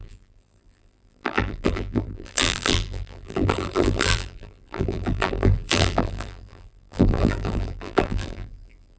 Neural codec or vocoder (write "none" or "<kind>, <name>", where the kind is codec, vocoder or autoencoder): vocoder, BigVGAN v2